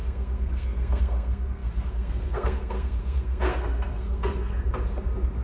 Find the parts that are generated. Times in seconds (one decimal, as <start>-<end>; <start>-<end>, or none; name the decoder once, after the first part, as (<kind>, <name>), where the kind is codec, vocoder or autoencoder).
0.0-5.4 (codec, SNAC)